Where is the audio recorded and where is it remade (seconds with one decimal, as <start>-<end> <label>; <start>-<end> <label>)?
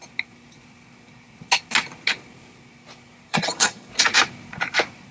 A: 0.0-3.3 recorded; 3.3-3.9 remade; 3.9-5.1 recorded